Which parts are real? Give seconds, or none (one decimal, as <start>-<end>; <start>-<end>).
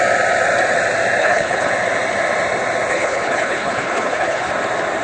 0.0-1.2; 1.7-2.9; 4.5-5.0